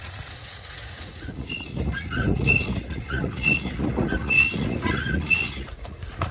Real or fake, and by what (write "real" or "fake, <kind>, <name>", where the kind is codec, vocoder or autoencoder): fake, vocoder, Vocos